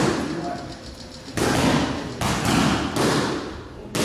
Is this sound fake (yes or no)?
no